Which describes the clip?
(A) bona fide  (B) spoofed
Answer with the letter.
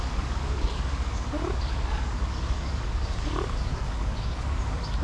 B